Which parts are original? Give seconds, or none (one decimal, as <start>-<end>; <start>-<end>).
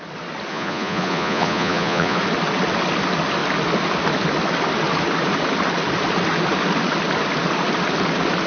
0.0-0.5; 2.2-8.5